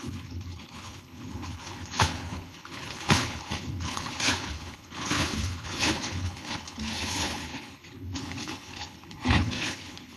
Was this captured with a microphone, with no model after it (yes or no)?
no